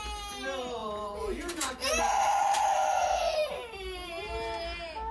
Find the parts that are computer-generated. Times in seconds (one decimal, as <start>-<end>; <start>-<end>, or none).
0.8-1.7